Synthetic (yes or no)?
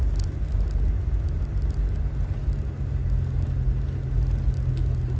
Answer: no